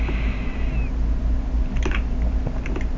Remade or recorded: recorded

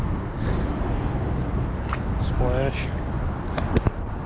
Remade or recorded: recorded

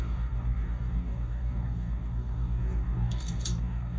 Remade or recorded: remade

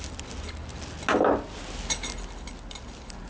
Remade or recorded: recorded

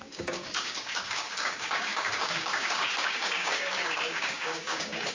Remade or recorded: remade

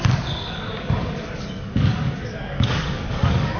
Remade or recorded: remade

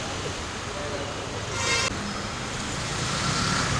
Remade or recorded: recorded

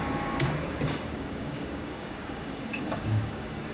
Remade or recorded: remade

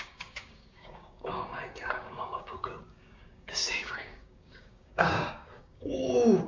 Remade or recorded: remade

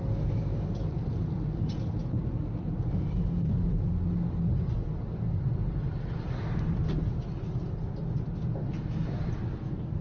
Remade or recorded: recorded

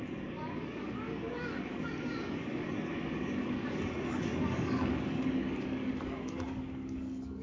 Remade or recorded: remade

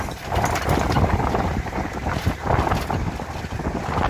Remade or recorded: recorded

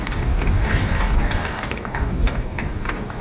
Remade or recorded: remade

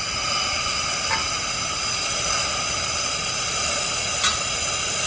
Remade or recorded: recorded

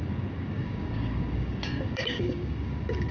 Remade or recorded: remade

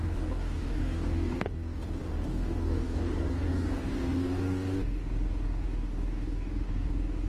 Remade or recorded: remade